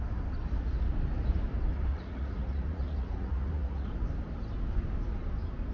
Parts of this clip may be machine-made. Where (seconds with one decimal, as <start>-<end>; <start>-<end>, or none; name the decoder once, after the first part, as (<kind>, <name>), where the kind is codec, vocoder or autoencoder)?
1.9-3.9 (vocoder, Vocos)